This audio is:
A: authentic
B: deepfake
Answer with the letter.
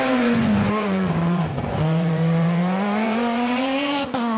B